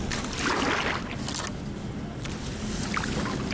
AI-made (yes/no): no